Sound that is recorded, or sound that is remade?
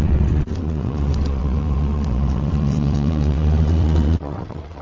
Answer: remade